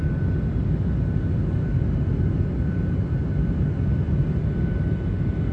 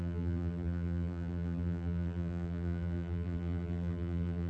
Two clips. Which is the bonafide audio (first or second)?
first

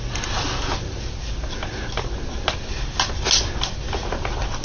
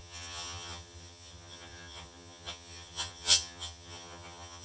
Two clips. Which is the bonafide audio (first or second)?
first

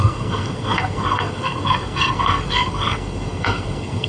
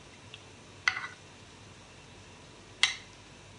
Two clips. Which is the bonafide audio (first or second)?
second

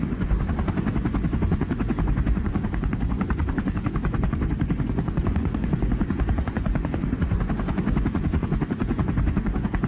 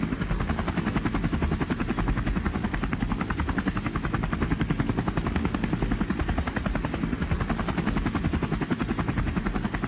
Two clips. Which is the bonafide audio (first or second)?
second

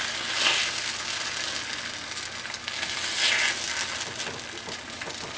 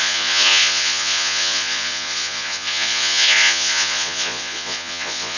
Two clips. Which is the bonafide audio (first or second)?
first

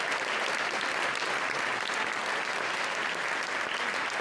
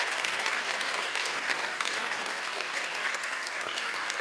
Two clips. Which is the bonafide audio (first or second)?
first